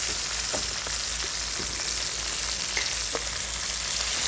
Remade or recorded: recorded